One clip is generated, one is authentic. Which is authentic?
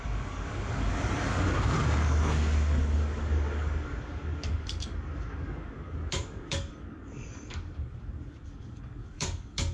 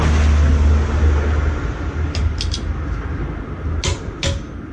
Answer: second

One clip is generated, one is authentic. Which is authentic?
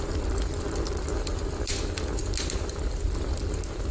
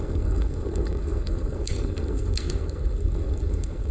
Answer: first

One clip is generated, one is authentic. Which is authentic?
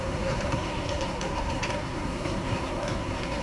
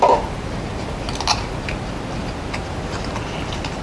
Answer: second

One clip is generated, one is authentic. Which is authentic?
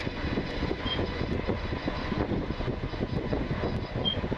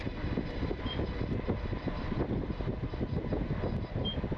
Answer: second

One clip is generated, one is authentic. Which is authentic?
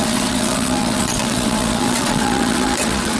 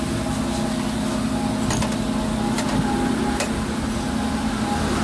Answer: second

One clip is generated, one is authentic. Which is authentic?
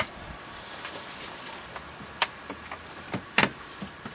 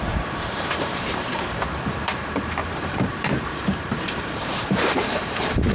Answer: first